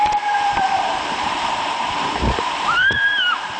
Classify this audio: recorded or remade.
remade